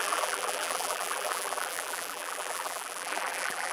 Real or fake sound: fake